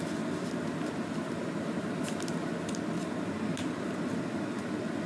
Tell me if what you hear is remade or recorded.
recorded